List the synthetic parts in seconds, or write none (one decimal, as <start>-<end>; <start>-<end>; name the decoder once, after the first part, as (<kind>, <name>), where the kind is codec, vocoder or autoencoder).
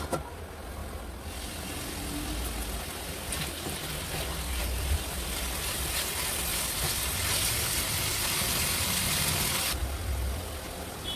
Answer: 6.5-7.0 (vocoder, BigVGAN v2); 8.1-9.2